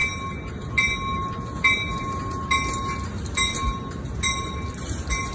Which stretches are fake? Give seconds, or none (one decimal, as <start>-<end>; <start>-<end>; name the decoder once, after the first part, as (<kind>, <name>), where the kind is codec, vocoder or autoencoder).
none